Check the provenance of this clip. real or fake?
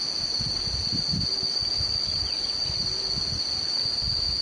real